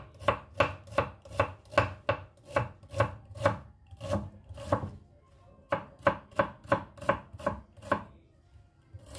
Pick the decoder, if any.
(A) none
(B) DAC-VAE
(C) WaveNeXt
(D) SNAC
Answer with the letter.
A